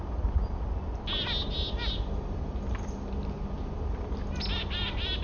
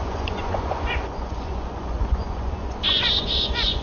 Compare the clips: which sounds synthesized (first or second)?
second